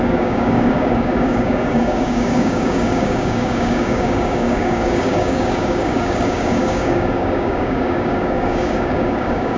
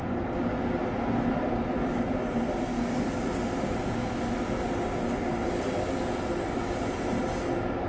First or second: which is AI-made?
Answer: first